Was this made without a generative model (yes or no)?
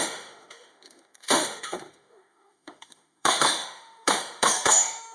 no